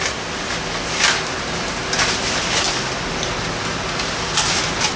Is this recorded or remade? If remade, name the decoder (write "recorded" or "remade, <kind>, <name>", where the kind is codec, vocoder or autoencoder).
recorded